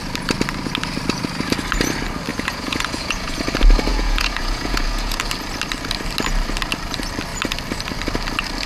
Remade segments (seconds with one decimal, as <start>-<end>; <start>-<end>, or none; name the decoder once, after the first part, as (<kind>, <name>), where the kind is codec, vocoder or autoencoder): 2.3-3.4 (vocoder, Vocos); 3.9-5.2